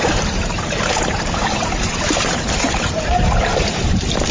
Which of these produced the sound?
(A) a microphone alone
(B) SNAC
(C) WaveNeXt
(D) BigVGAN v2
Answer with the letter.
D